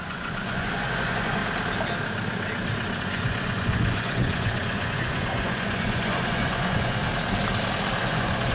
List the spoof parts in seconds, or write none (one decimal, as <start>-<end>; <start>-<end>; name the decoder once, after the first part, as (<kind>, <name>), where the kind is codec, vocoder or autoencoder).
0.0-1.4 (vocoder, Vocos); 3.0-7.0; 8.0-8.5